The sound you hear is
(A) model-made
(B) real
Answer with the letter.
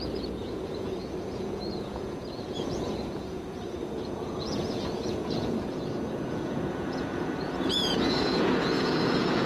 A